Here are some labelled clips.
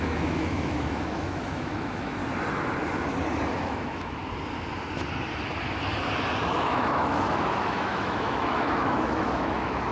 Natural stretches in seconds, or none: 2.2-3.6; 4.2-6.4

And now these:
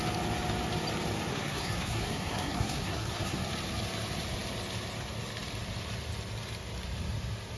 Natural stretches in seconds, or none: 0.0-1.3; 3.4-7.6

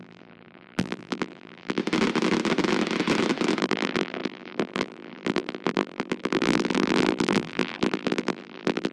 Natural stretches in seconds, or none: 1.8-3.6